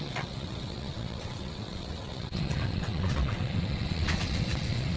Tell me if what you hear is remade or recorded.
remade